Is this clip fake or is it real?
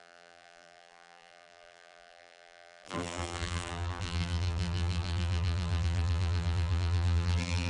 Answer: fake